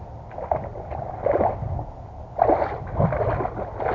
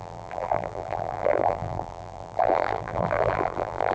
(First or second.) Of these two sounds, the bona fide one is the first